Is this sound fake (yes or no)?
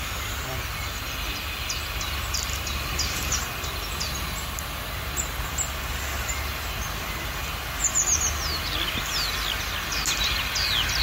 no